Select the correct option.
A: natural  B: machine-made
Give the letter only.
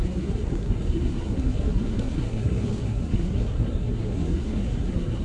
B